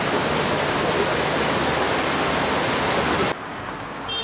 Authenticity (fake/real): real